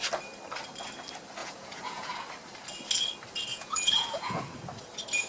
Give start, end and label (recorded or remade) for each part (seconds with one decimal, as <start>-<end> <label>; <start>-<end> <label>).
0.0-1.4 recorded; 1.4-2.1 remade; 2.1-3.5 recorded; 3.5-4.4 remade; 4.4-5.3 recorded

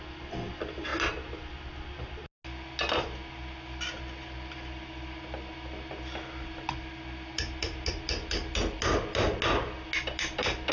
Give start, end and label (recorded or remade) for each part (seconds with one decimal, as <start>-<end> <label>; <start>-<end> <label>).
0.0-10.7 recorded

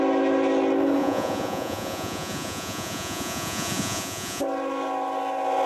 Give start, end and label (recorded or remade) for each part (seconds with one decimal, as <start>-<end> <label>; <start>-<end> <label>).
0.0-1.0 recorded; 1.0-4.4 remade; 4.4-5.7 recorded